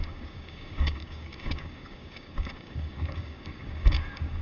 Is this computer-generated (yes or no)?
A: yes